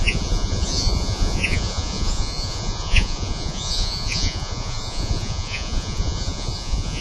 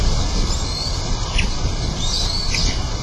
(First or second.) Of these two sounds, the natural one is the second